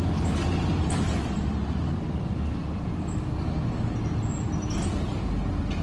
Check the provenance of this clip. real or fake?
real